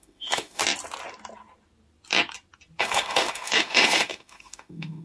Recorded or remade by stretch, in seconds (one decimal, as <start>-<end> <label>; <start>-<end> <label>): 0.0-0.6 remade; 0.6-2.8 recorded; 2.8-5.0 remade

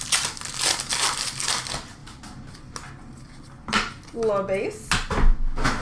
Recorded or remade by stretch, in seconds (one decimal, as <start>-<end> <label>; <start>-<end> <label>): 0.0-5.8 recorded

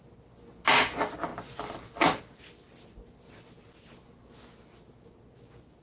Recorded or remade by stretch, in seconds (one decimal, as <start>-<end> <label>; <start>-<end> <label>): 0.0-5.8 recorded

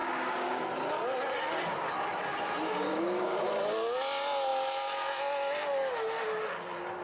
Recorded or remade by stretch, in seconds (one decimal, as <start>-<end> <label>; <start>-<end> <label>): 0.0-0.6 remade; 0.6-2.9 recorded; 2.9-3.4 remade; 3.4-7.0 recorded

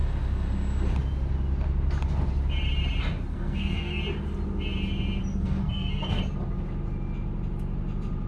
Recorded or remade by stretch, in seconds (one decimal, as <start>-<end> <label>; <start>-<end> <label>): 0.0-3.3 recorded; 3.3-4.0 remade; 4.0-5.3 recorded; 5.3-6.2 remade; 6.2-8.3 recorded

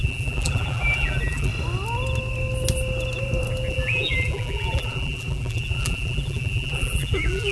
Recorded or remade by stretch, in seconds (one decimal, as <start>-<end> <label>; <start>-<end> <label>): 0.0-1.5 remade; 1.5-3.7 recorded; 3.7-7.5 remade

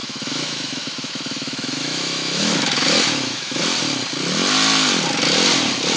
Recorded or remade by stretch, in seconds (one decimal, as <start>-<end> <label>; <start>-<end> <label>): 0.0-3.6 remade; 3.6-6.0 recorded